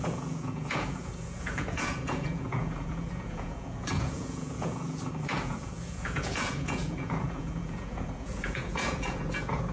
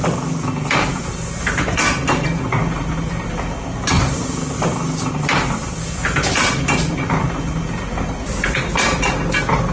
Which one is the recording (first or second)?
second